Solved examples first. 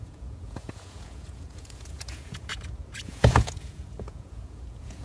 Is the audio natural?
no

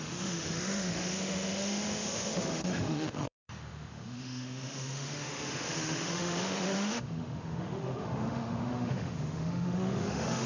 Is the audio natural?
no